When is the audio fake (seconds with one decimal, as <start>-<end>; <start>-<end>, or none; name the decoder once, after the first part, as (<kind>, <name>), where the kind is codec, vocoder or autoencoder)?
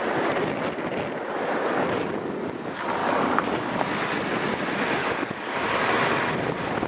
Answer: 3.0-3.8 (codec, DAC); 5.0-6.2